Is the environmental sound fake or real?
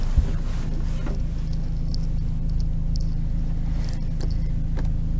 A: real